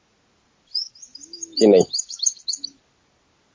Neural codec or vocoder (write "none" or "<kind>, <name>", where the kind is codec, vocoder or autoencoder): none